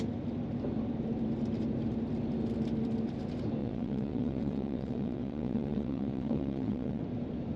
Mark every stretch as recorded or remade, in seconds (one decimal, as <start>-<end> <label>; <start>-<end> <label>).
0.0-3.6 recorded; 3.6-7.0 remade; 7.0-7.6 recorded

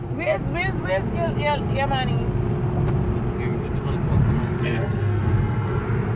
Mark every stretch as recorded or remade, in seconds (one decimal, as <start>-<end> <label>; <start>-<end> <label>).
0.0-4.6 recorded; 4.6-5.8 remade; 5.8-6.2 recorded

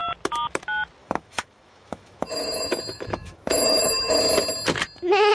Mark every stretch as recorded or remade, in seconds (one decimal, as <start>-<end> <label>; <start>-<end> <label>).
0.0-1.0 recorded; 1.0-4.2 remade; 4.2-5.3 recorded

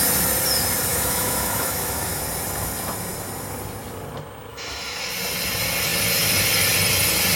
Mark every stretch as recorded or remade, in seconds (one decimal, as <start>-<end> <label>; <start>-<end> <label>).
0.0-0.9 recorded; 0.9-2.2 remade; 2.2-4.5 recorded; 4.5-5.0 remade; 5.0-7.4 recorded

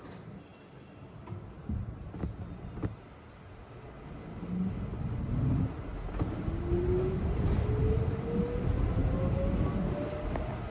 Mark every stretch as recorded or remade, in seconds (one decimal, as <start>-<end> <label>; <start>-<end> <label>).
0.0-10.7 recorded

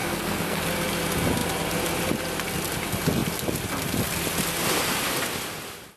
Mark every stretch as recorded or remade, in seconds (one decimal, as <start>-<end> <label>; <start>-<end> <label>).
0.0-0.6 remade; 0.6-6.0 recorded